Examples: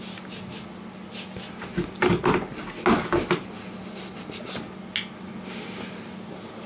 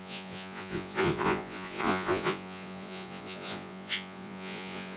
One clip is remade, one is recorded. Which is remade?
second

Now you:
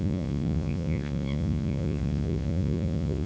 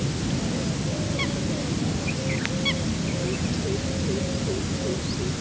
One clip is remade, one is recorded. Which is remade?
first